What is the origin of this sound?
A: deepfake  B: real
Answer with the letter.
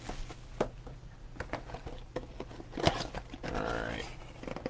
B